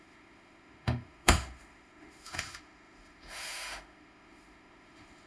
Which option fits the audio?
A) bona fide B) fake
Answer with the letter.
B